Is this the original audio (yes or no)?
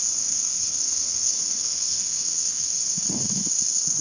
no